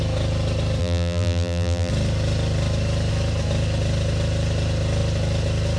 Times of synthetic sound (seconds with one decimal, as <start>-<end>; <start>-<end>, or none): 0.8-1.9